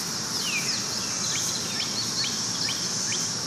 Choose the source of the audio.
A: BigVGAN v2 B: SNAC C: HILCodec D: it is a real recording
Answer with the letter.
D